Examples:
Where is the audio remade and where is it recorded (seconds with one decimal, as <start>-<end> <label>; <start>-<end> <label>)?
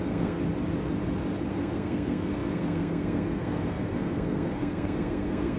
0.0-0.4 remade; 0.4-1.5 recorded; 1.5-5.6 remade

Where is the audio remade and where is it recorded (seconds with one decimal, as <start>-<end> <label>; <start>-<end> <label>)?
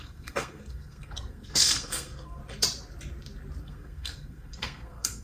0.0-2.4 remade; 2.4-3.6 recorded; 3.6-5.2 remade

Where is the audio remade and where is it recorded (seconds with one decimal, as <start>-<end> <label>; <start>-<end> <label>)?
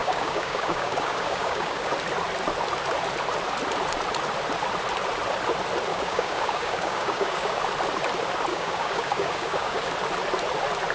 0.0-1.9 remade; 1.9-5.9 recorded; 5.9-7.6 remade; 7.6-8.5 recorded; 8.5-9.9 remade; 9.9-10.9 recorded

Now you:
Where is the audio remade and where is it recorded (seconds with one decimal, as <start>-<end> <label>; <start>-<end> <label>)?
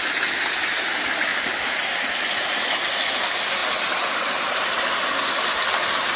0.0-6.2 recorded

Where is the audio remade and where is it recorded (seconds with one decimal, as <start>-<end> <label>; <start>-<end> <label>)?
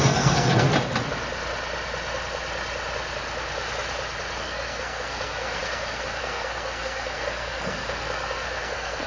0.0-0.7 remade; 0.7-4.4 recorded; 4.4-9.1 remade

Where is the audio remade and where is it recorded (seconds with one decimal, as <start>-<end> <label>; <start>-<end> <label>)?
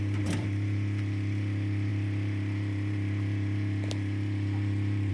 0.0-5.1 remade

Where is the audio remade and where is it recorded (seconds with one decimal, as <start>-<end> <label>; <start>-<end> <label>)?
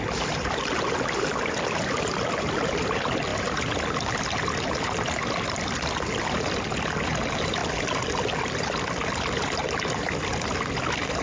0.0-11.2 recorded